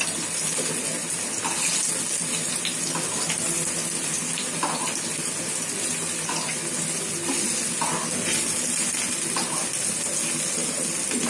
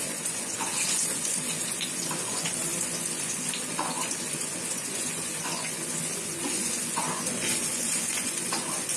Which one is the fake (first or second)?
second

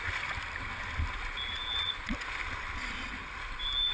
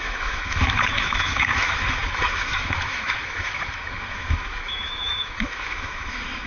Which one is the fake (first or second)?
second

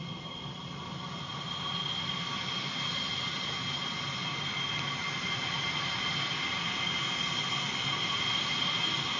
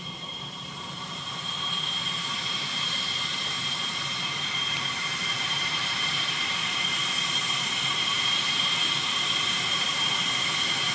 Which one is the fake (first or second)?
second